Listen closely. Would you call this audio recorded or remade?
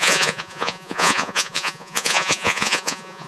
remade